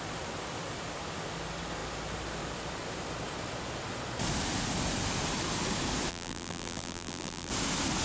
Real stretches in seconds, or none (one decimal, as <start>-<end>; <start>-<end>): 0.0-6.1; 7.5-8.0